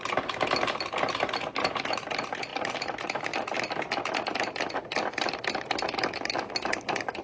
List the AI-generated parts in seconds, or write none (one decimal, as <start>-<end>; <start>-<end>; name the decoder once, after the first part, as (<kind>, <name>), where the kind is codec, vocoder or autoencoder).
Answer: none